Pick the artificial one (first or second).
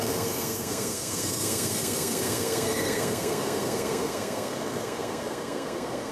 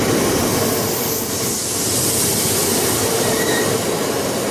first